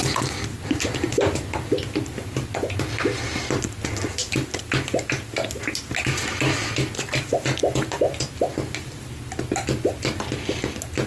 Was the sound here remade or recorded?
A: recorded